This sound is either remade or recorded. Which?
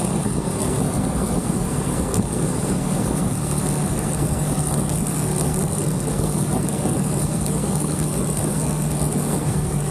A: remade